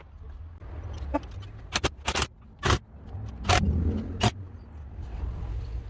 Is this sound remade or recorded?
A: recorded